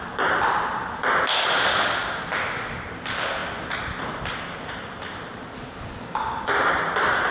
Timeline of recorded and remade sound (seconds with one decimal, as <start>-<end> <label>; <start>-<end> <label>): 0.0-7.3 recorded